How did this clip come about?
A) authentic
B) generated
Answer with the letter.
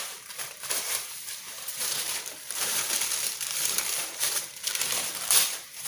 B